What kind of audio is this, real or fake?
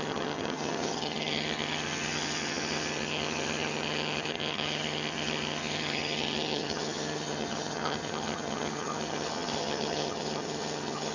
fake